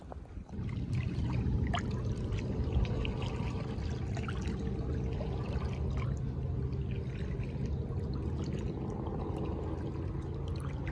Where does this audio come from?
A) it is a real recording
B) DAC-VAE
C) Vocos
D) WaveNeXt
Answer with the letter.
A